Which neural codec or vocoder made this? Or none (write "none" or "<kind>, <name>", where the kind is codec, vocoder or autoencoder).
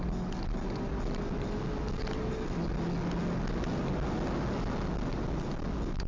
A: none